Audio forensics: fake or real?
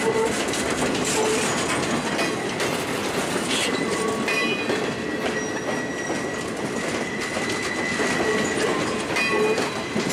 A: real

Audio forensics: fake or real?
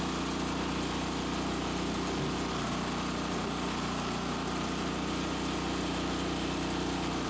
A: real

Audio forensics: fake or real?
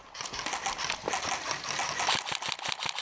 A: real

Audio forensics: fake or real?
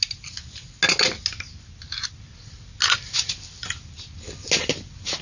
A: real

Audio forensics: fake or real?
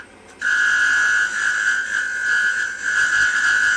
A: real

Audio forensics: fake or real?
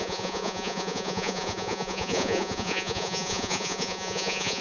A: fake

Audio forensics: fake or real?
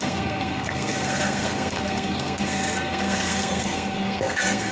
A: fake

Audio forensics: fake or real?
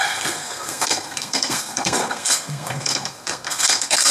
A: fake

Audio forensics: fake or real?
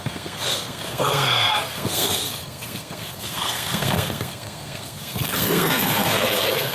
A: fake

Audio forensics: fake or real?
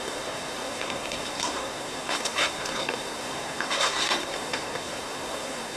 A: fake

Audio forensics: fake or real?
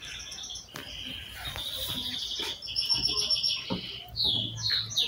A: fake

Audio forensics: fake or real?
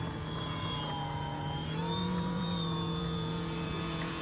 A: fake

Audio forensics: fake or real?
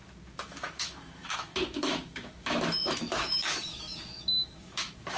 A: fake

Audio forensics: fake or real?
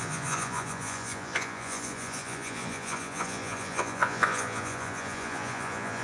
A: fake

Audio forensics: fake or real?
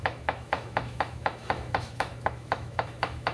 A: fake